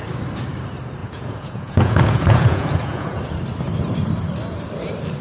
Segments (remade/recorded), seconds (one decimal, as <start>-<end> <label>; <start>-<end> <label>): 0.0-1.0 recorded; 1.0-3.2 remade; 3.2-5.2 recorded